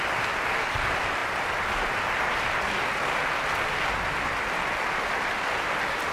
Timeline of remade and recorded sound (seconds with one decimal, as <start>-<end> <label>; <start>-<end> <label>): 0.0-6.1 recorded